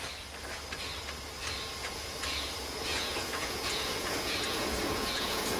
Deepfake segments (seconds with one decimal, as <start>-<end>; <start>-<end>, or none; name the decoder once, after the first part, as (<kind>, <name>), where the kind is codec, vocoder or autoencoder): 1.8-5.6 (vocoder, Vocos)